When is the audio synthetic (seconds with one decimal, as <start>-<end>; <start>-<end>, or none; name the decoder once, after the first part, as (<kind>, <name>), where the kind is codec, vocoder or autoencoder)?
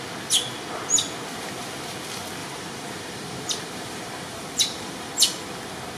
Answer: 2.4-5.1 (vocoder, BigVGAN v2)